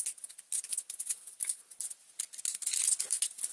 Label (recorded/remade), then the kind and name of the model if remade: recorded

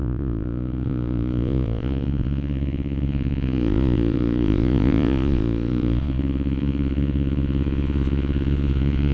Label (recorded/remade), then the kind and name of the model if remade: remade, vocoder, Vocos